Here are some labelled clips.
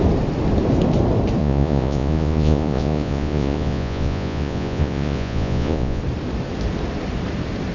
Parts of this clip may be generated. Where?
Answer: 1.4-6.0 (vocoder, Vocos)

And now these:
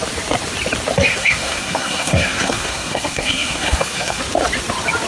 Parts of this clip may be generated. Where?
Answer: 1.1-4.2 (codec, SNAC)

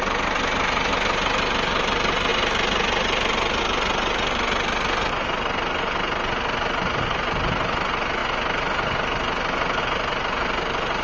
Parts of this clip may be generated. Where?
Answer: none

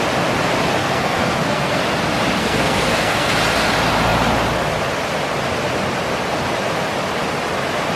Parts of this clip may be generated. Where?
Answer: 0.8-1.8 (codec, SNAC); 2.4-3.3